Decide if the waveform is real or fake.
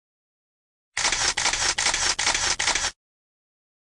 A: real